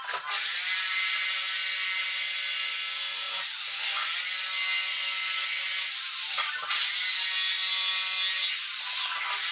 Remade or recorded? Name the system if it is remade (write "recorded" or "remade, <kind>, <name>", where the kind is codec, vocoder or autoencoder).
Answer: recorded